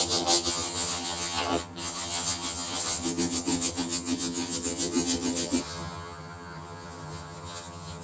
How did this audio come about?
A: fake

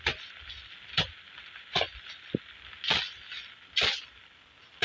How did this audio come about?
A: real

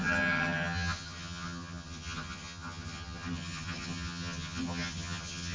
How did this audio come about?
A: fake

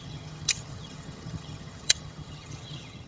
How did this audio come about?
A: fake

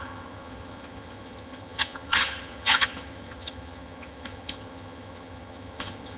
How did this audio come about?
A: fake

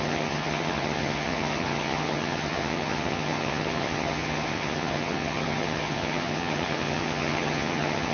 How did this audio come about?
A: fake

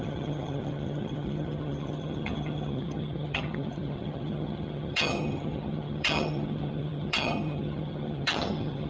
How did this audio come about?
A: fake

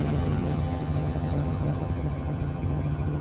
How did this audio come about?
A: fake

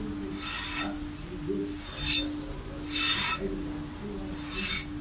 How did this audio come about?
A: real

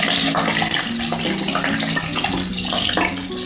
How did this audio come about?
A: real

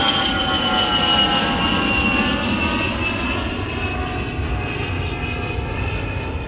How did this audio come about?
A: real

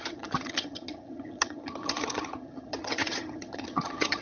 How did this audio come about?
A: fake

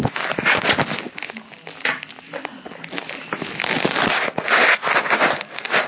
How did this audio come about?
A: real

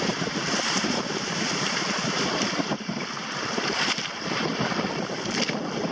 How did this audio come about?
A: real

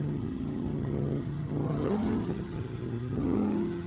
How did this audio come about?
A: fake